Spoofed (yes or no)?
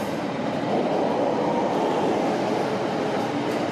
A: yes